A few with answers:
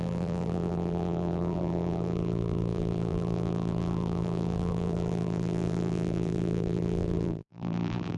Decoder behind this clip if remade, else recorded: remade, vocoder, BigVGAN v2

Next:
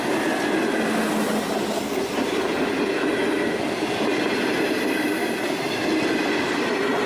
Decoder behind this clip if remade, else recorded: recorded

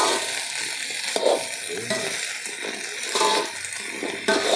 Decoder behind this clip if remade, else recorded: recorded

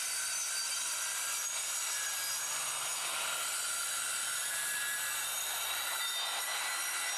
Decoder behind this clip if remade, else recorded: remade, vocoder, BigVGAN v2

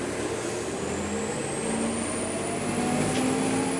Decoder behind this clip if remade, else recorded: recorded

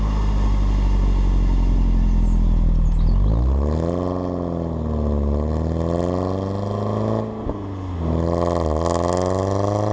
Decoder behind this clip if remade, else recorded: recorded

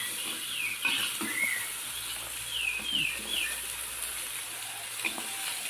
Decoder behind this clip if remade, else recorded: remade, vocoder, BigVGAN v2